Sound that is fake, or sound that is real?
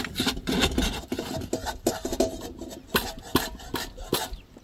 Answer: real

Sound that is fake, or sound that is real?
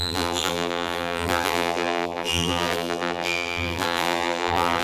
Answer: fake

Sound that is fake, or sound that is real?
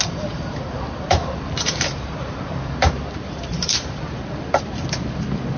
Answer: fake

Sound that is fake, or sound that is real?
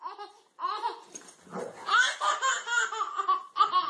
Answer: real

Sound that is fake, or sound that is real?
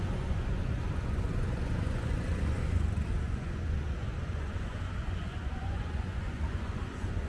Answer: fake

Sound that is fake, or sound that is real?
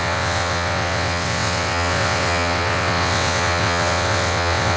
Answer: fake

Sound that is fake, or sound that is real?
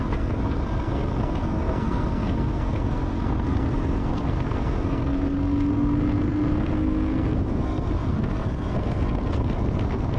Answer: fake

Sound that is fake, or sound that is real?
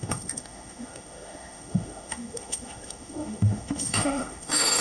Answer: fake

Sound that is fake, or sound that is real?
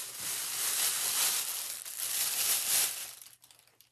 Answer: real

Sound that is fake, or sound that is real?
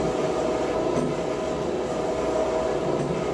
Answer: real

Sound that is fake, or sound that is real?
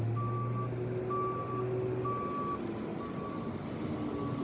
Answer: real